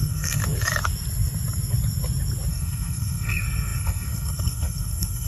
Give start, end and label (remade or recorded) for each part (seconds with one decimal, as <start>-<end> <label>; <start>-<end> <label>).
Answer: 0.0-0.4 remade; 0.4-2.5 recorded; 2.5-5.3 remade